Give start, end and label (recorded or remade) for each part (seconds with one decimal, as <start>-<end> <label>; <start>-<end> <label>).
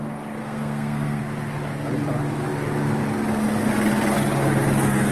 0.0-0.4 recorded; 0.4-1.2 remade; 1.2-5.1 recorded